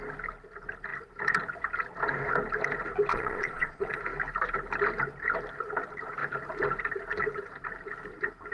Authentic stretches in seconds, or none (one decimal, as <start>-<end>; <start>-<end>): 0.0-3.1; 4.0-8.5